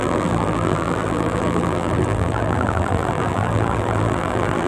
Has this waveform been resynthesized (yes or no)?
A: yes